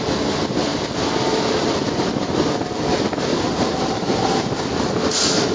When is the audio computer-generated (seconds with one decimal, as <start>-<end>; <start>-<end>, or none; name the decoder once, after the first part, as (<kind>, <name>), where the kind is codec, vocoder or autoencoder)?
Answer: 3.3-4.6 (vocoder, BigVGAN v2)